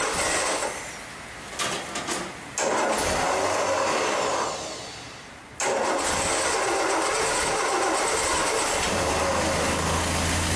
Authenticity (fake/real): real